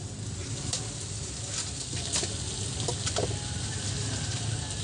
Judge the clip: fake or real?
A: real